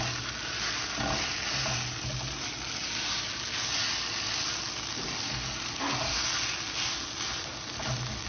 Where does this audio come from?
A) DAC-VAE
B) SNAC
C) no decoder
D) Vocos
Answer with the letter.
C